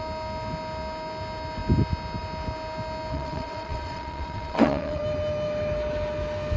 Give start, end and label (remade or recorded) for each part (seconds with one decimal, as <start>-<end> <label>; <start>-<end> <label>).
0.0-3.1 recorded; 3.1-5.0 remade; 5.0-6.6 recorded

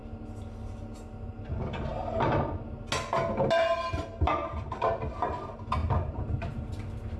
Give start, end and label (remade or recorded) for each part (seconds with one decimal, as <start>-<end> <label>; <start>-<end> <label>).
0.0-5.8 recorded; 5.8-6.7 remade; 6.7-7.2 recorded

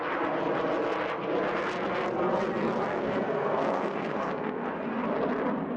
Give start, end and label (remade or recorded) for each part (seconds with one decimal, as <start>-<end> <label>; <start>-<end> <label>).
0.0-2.9 recorded; 2.9-4.7 remade; 4.7-5.8 recorded

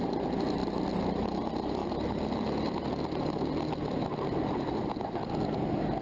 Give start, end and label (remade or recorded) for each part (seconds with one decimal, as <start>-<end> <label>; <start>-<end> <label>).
0.0-6.0 recorded

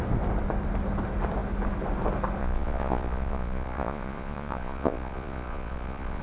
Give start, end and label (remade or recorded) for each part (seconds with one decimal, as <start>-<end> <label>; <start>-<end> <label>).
0.0-2.4 recorded; 2.4-6.2 remade

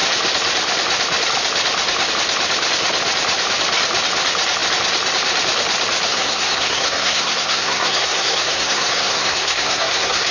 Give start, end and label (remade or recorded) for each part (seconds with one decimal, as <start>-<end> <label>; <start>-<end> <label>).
0.0-6.1 recorded; 6.1-10.3 remade